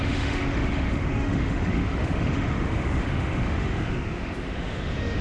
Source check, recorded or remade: remade